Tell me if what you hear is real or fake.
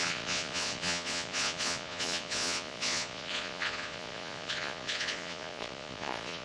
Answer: fake